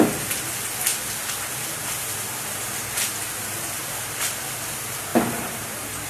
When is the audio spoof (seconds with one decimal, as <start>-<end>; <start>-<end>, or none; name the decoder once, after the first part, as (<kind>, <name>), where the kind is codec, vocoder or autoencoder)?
5.1-6.1 (vocoder, BigVGAN v2)